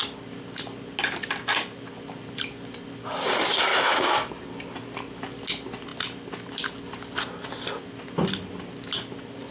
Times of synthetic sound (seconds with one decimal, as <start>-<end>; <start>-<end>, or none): 3.7-4.3